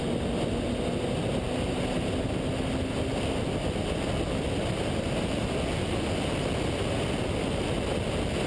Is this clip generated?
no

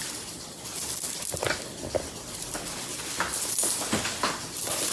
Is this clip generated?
no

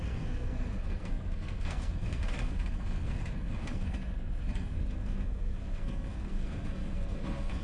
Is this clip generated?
yes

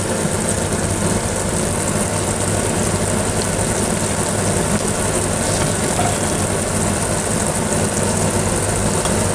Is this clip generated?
no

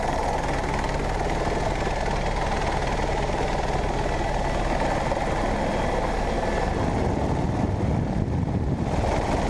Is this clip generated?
no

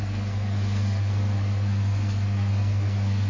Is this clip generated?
yes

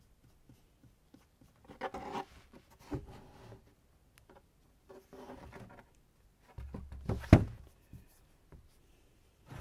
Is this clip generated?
no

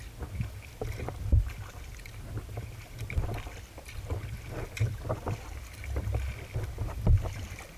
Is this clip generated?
no